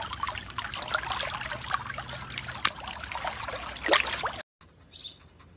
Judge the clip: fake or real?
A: real